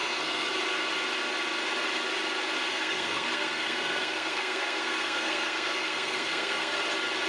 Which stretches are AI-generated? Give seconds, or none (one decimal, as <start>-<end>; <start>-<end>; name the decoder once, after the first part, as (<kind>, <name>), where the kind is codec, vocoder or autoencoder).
0.0-0.5 (codec, SNAC); 2.7-6.8